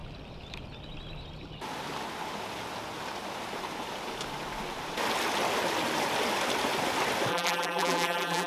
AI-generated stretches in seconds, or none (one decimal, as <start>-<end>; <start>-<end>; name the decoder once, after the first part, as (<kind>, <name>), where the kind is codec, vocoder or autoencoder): 7.3-8.5 (vocoder, BigVGAN v2)